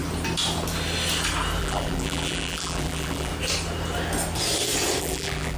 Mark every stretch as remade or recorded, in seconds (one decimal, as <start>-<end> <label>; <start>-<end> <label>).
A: 0.0-1.6 recorded; 1.6-3.3 remade; 3.3-5.0 recorded; 5.0-5.6 remade